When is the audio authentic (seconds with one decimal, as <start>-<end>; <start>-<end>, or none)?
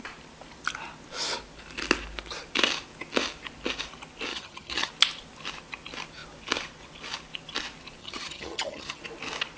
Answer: 0.0-4.3; 4.9-8.0; 9.0-9.6